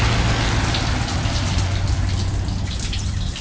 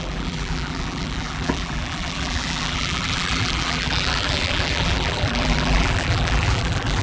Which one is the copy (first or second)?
second